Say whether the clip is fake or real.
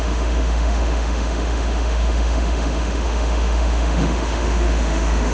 fake